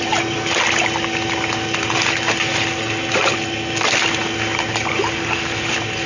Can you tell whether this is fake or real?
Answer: real